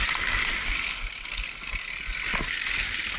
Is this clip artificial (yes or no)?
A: no